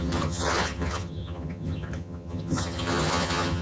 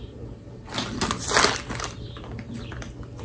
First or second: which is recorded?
second